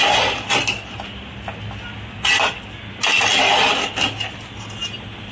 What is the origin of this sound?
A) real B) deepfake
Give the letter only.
A